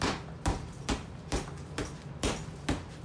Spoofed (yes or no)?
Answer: no